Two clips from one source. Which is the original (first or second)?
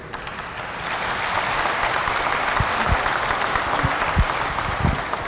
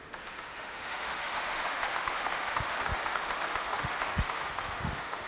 first